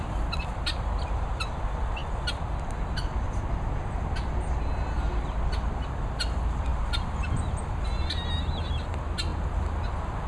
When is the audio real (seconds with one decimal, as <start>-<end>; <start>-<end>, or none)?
0.0-10.3